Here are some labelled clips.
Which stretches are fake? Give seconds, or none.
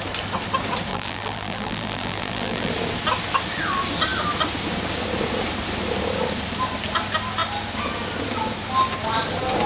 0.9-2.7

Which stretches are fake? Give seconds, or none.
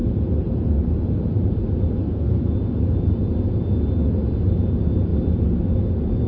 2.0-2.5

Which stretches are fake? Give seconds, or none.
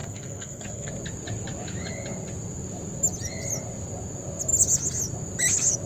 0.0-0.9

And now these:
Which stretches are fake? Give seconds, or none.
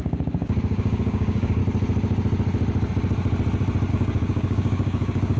0.0-1.6; 3.9-5.4